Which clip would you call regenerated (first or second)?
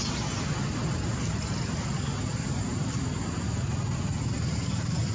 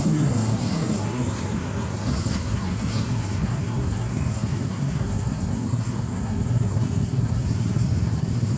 second